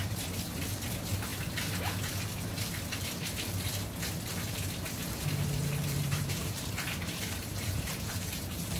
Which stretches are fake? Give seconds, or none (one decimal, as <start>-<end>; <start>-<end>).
5.0-8.8